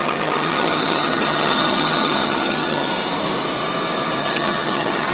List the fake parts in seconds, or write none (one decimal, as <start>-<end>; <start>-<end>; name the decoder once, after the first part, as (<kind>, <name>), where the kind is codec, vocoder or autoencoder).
0.0-2.9 (vocoder, HiFi-GAN); 4.2-5.1